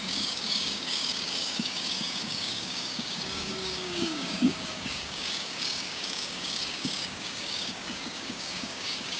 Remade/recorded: remade